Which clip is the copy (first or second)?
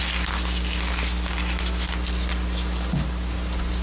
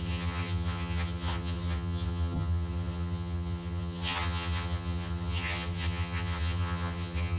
second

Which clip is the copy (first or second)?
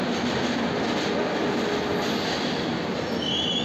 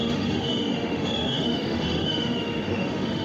second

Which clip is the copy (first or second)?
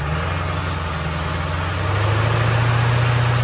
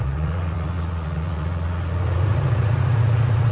second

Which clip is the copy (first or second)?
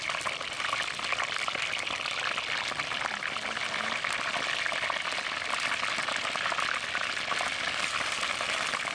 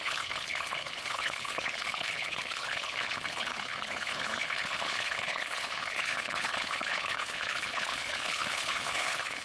second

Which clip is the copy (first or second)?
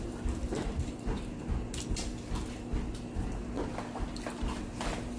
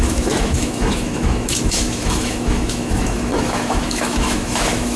second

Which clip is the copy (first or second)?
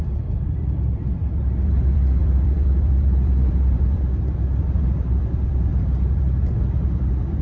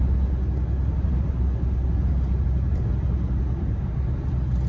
first